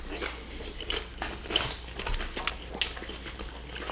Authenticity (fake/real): real